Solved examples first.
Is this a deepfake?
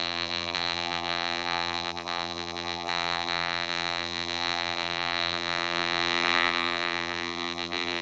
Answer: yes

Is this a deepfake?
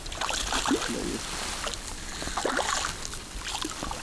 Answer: no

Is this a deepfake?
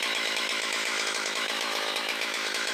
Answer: yes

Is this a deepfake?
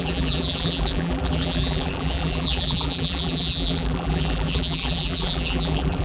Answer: yes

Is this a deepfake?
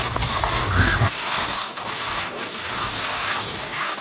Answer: yes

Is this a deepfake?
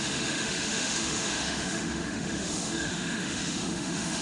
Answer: yes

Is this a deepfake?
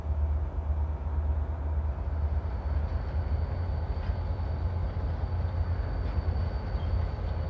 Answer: no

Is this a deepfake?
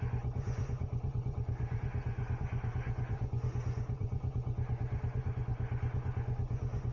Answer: yes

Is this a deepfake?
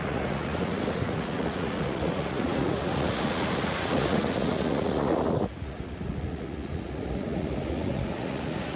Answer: yes